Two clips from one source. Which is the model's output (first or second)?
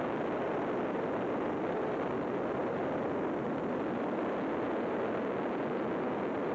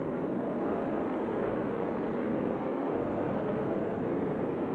second